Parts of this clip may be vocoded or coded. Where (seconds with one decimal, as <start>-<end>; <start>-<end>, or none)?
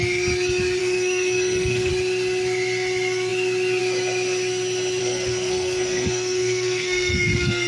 0.8-1.9; 5.0-7.7